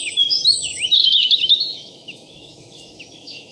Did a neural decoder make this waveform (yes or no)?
yes